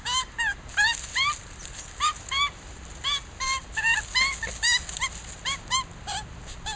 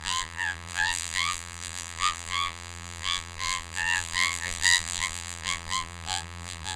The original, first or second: first